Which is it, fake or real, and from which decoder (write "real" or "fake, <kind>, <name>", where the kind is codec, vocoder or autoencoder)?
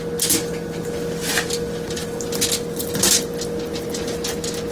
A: real